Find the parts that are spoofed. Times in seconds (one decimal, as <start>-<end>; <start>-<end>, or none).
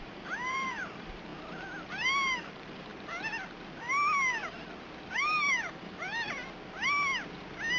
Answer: 0.0-1.3; 2.4-2.9; 5.3-6.4